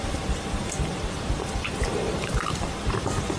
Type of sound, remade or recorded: remade